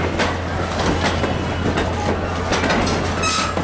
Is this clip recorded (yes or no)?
yes